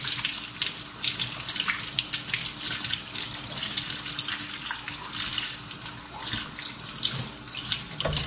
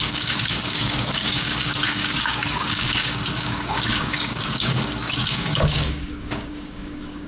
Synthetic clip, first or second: second